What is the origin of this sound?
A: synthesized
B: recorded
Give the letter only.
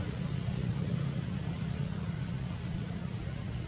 A